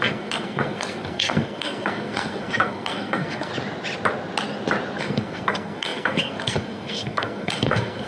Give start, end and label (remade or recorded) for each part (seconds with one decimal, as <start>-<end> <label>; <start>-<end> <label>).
0.0-3.5 remade; 3.5-5.0 recorded; 5.0-8.1 remade